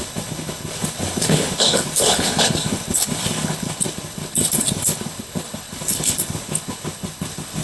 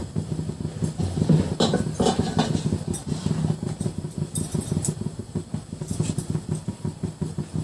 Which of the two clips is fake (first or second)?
first